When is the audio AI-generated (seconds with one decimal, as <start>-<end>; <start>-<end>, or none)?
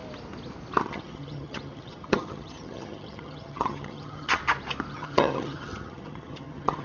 0.8-4.4; 4.9-6.8